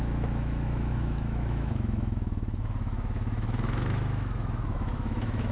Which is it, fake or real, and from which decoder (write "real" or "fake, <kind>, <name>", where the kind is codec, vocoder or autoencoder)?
fake, autoencoder, DAC-VAE